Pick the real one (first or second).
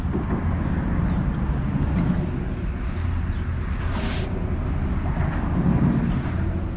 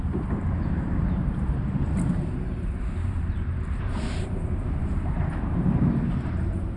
first